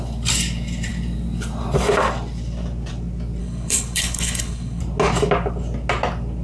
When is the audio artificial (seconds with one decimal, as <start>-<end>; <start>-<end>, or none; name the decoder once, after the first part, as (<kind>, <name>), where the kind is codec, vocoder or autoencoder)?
3.4-4.8 (codec, HILCodec)